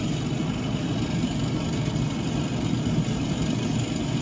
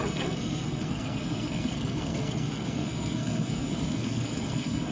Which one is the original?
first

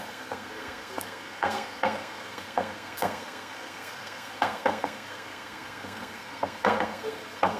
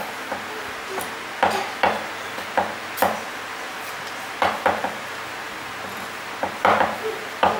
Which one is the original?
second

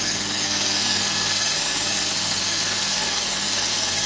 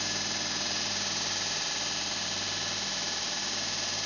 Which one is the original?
second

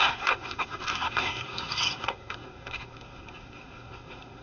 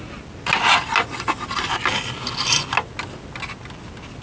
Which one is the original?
second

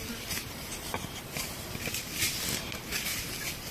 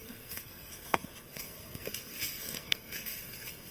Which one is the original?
first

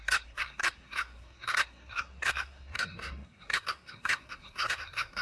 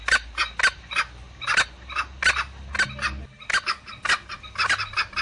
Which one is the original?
second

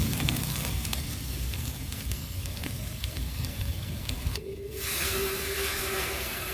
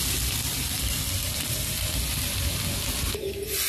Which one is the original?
second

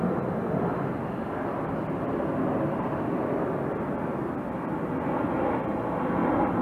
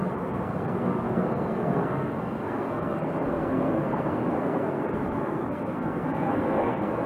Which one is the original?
first